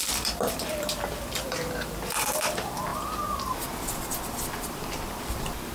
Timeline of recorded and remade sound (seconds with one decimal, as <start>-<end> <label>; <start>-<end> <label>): 0.0-5.7 remade